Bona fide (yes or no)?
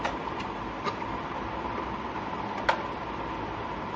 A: yes